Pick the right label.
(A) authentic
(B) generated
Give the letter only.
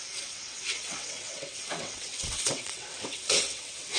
B